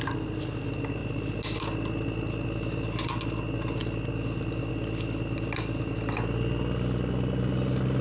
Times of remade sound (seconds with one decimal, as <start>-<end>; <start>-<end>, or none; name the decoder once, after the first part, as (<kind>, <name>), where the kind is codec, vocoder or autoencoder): none